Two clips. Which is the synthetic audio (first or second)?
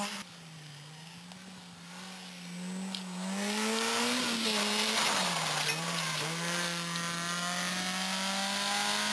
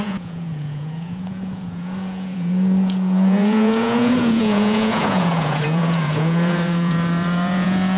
second